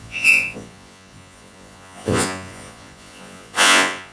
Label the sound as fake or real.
fake